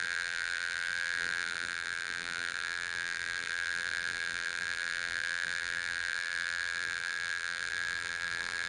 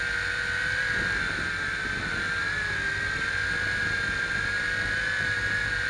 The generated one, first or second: first